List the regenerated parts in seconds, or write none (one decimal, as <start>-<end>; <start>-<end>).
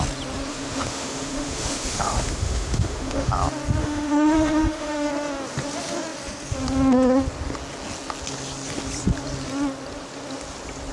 0.5-3.3; 3.8-5.1